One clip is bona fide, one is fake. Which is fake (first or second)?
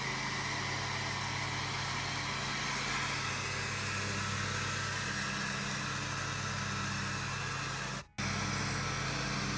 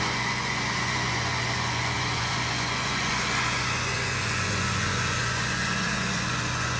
second